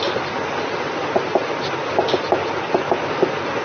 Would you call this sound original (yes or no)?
yes